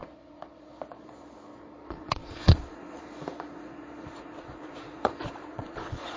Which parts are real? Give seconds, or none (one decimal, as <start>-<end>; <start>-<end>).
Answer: none